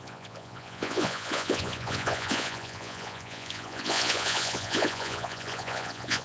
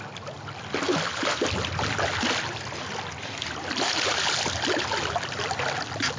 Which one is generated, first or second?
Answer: first